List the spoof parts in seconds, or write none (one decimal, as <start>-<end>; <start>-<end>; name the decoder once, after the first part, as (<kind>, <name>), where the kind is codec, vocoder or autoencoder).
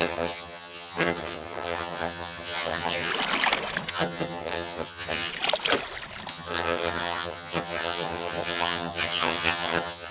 0.0-3.1 (vocoder, HiFi-GAN); 3.9-5.3; 6.3-10.1